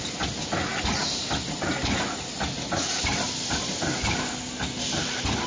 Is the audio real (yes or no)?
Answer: yes